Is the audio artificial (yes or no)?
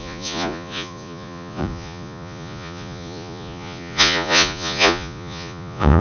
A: yes